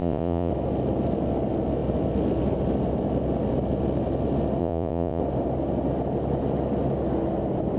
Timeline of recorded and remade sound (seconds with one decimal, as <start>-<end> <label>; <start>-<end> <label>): 0.0-0.5 remade; 0.5-4.6 recorded; 4.6-5.2 remade; 5.2-7.8 recorded